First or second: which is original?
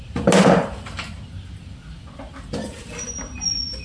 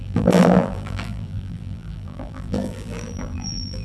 first